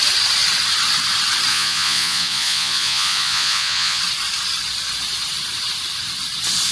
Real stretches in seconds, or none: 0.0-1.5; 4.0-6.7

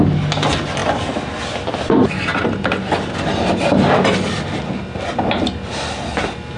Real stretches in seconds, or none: 0.0-6.6

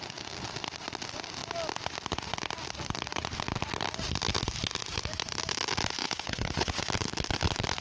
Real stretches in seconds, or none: 0.0-6.0; 6.8-7.8